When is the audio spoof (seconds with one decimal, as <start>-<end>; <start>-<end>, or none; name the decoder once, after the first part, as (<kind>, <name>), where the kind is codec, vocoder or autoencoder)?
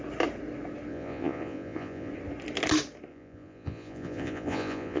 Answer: 0.9-2.1 (vocoder, Vocos); 3.1-5.0